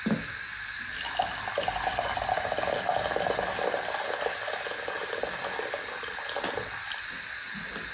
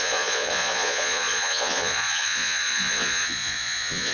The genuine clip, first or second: first